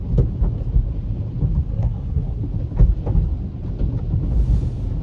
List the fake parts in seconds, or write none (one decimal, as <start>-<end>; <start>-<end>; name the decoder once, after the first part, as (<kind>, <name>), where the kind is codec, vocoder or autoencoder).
1.7-2.4 (codec, SNAC)